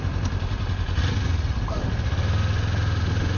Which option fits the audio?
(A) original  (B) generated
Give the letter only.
A